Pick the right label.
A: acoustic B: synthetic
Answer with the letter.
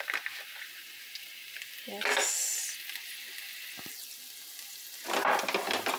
A